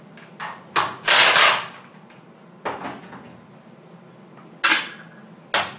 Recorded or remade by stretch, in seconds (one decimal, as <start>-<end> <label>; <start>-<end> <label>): 0.0-5.8 recorded